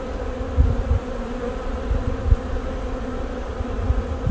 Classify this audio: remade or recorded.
recorded